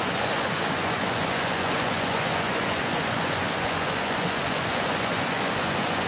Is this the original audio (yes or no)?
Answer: no